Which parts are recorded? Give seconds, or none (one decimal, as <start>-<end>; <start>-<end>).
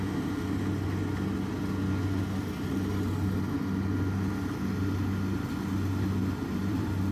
0.0-6.2